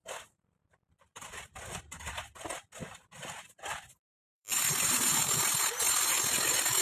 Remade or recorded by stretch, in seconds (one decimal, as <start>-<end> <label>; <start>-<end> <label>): 0.0-2.1 remade; 2.1-4.1 recorded; 4.1-4.7 remade; 4.7-6.8 recorded